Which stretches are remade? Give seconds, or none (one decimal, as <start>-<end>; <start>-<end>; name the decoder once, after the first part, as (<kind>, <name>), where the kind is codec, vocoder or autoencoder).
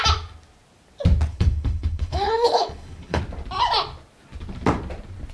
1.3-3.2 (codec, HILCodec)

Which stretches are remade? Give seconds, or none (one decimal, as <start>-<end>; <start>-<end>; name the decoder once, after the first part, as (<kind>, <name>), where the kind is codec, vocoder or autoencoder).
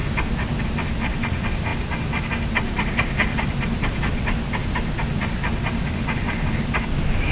none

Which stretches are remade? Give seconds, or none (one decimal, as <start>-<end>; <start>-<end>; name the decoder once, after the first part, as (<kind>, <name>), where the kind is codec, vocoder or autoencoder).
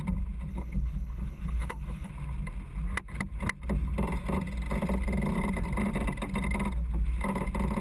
0.5-2.1 (codec, HILCodec)